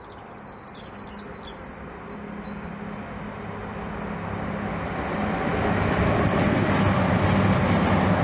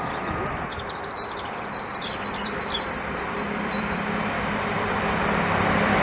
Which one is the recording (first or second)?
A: first